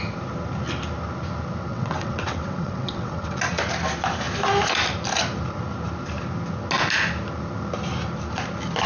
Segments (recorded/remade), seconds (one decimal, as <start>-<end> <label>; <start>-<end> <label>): 0.0-1.7 recorded; 1.7-3.4 remade; 3.4-8.9 recorded

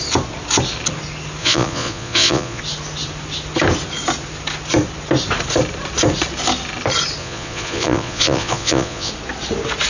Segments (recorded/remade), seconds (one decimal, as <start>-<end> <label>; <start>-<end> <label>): 0.0-1.4 recorded; 1.4-2.6 remade; 2.6-7.2 recorded; 7.2-9.1 remade; 9.1-9.9 recorded

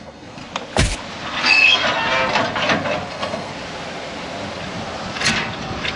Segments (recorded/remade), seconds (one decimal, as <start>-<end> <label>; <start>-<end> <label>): 0.0-0.4 remade; 0.4-1.4 recorded; 1.4-1.8 remade; 1.8-3.1 recorded; 3.1-3.5 remade; 3.5-6.0 recorded

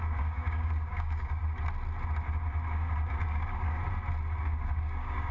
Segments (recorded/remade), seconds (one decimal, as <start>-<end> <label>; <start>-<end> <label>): 0.0-1.4 remade; 1.4-2.7 recorded; 2.7-3.8 remade; 3.8-4.4 recorded; 4.4-5.3 remade